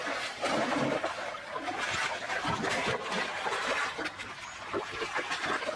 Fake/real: fake